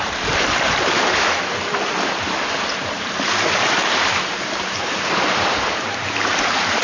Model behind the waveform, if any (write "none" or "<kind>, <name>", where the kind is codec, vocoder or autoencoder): vocoder, BigVGAN v2